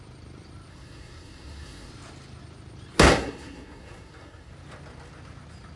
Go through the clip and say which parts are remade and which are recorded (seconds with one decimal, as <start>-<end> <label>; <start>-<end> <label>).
0.0-0.7 recorded; 0.7-1.9 remade; 1.9-3.1 recorded; 3.1-4.5 remade; 4.5-5.8 recorded